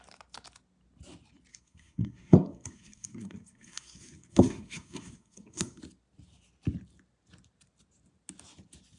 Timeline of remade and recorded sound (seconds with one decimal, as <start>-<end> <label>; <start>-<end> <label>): 0.0-1.5 recorded; 1.5-5.8 remade; 5.8-9.0 recorded